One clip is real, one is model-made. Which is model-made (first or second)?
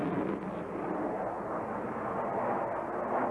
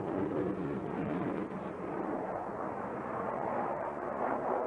second